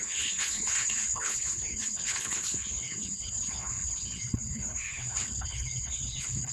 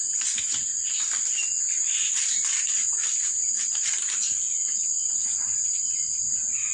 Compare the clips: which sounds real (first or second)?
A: second